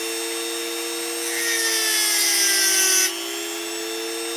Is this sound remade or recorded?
recorded